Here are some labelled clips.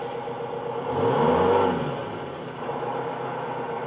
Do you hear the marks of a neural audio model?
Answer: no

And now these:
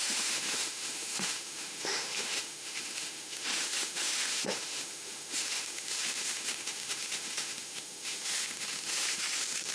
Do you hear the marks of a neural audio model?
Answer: yes